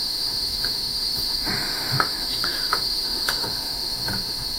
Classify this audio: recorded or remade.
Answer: remade